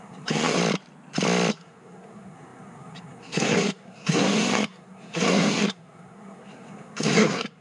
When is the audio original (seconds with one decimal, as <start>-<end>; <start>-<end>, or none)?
0.6-1.5